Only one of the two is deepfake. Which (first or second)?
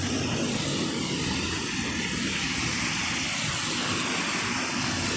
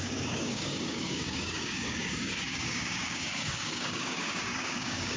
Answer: second